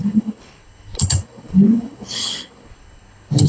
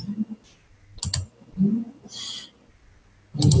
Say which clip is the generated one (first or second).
first